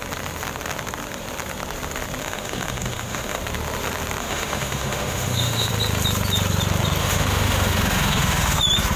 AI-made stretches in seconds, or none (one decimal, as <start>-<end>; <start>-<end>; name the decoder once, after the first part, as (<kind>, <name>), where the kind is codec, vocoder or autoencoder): 2.2-3.4 (autoencoder, DAC-VAE); 4.2-5.7; 7.0-8.6